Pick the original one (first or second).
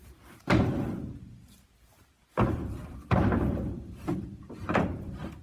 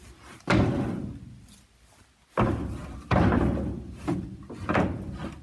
second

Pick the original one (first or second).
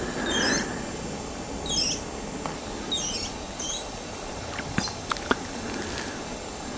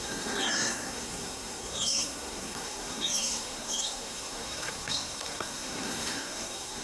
first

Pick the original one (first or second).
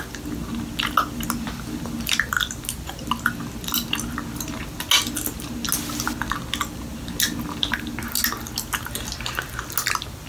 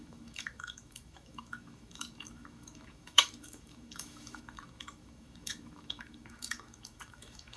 first